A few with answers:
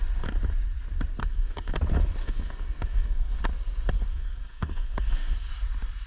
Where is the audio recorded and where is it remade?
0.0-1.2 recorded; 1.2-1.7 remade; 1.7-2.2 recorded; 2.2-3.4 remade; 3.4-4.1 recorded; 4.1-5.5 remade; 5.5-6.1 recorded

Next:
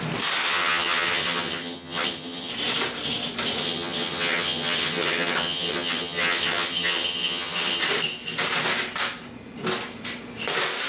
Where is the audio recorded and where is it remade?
0.0-0.4 recorded; 0.4-2.5 remade; 2.5-3.6 recorded; 3.6-7.8 remade; 7.8-10.9 recorded

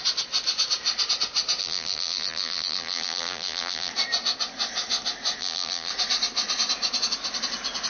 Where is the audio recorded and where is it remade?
0.0-1.6 recorded; 1.6-3.9 remade; 3.9-5.4 recorded; 5.4-5.9 remade; 5.9-7.9 recorded

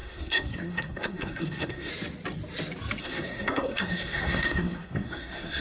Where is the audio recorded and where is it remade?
0.0-1.9 remade; 1.9-3.0 recorded; 3.0-5.6 remade

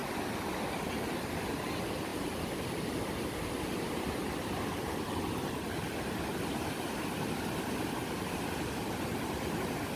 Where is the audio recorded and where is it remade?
0.0-10.0 recorded

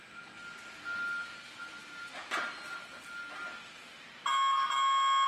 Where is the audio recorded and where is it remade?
0.0-5.3 recorded